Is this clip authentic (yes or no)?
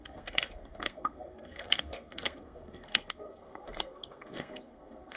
no